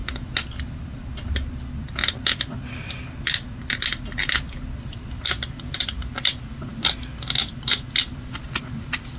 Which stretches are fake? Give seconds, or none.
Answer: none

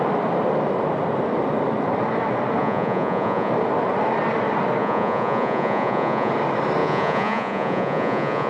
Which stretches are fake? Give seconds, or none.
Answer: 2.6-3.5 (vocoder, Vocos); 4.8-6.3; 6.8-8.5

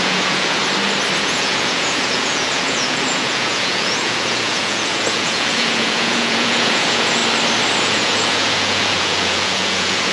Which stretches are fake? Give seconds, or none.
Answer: 0.0-0.6 (vocoder, Vocos); 1.2-7.2; 7.8-10.1